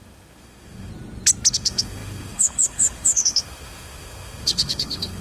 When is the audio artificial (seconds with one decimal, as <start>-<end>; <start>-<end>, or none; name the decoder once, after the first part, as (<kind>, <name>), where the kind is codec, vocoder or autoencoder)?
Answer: 0.0-0.9 (autoencoder, DAC-VAE); 1.5-5.2